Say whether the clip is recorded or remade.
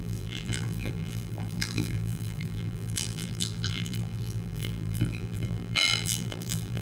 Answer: remade